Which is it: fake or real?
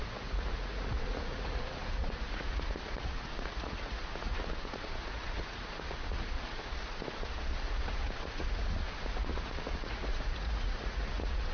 fake